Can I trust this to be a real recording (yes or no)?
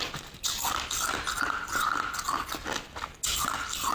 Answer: yes